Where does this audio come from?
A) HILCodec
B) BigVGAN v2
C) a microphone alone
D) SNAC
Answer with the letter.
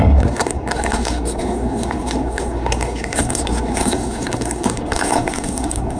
D